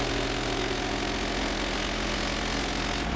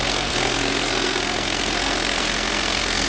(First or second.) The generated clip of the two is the second